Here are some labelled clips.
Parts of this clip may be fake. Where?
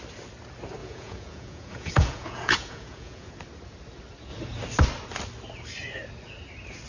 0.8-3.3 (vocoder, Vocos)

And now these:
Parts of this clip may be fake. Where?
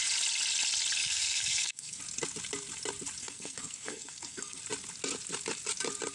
1.0-2.0 (codec, SNAC); 3.2-4.6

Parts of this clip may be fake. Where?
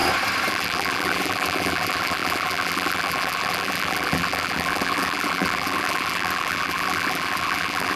0.5-8.0 (vocoder, BigVGAN v2)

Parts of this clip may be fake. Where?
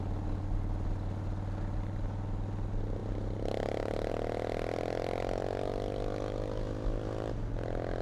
none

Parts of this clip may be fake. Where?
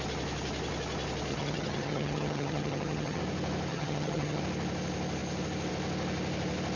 1.3-3.2 (vocoder, HiFi-GAN); 3.7-4.4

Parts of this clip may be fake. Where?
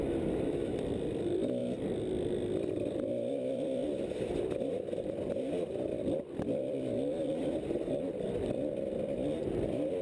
0.0-1.6 (vocoder, BigVGAN v2); 2.7-3.8; 4.9-10.0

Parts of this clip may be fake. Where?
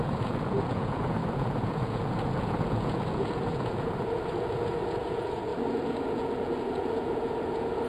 0.0-7.9 (vocoder, Vocos)